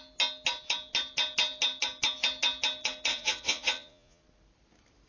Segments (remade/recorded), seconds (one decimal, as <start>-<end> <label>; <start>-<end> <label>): 0.0-3.1 recorded; 3.1-4.2 remade; 4.2-5.1 recorded